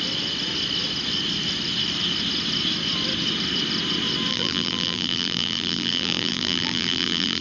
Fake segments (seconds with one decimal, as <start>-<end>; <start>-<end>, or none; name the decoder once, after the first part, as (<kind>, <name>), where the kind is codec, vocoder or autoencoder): 4.3-7.4 (vocoder, BigVGAN v2)